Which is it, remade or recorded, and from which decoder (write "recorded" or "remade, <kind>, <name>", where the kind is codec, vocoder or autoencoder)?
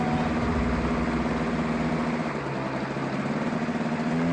recorded